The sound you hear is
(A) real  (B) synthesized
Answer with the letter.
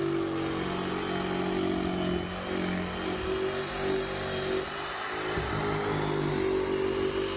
A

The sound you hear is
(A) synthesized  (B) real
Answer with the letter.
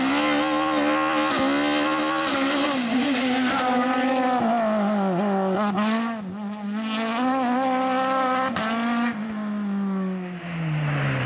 B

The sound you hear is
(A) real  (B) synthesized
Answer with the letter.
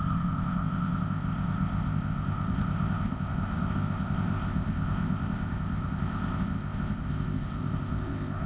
B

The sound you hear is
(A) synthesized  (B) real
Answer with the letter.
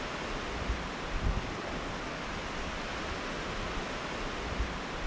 B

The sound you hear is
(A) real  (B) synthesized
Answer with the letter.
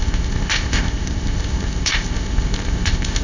B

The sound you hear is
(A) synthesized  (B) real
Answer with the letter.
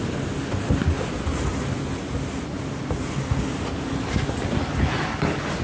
B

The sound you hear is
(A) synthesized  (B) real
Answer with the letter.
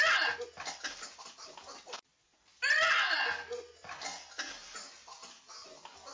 B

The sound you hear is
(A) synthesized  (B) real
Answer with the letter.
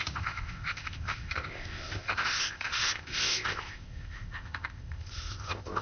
A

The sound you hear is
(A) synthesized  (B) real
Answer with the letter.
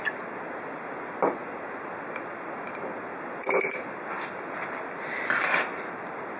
B